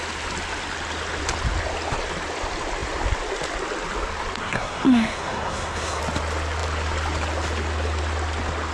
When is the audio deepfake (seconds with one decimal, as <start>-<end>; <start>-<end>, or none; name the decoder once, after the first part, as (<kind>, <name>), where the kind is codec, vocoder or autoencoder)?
4.4-6.0 (codec, SNAC)